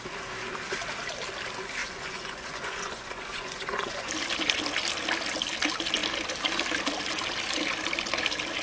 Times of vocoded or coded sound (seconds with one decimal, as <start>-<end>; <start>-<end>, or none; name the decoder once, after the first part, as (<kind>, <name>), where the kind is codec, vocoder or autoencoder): 1.8-4.1 (vocoder, Vocos)